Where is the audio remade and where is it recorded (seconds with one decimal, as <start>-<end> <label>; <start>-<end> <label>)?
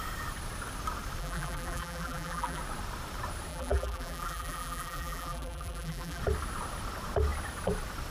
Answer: 0.0-1.2 recorded; 1.2-2.6 remade; 2.6-3.5 recorded; 3.5-6.2 remade; 6.2-8.1 recorded